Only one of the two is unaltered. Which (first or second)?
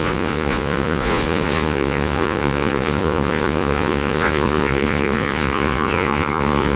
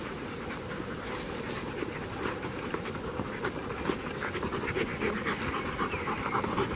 second